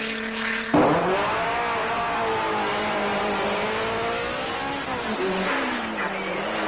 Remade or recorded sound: recorded